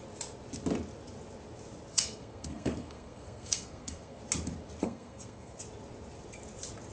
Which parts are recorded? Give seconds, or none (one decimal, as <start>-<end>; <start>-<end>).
0.0-1.9; 4.2-4.8; 5.6-6.9